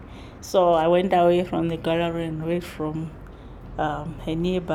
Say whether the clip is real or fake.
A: real